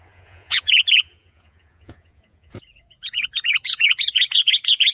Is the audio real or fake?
fake